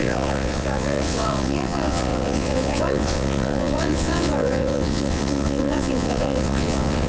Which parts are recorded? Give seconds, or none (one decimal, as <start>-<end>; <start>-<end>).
none